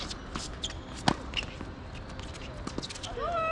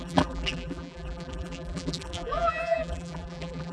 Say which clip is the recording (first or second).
first